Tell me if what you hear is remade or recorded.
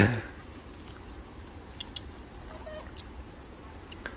recorded